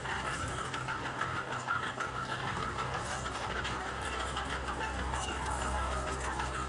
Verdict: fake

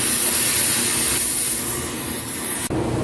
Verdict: real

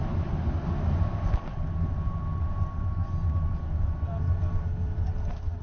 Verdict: real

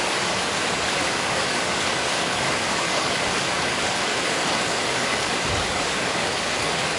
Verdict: fake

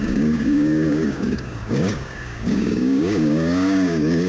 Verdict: fake